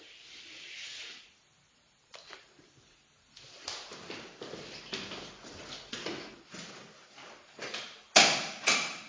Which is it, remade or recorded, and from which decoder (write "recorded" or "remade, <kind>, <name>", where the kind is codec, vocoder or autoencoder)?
recorded